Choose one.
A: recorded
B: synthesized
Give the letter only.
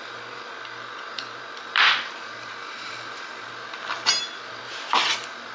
B